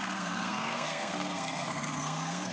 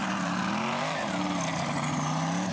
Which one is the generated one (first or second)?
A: first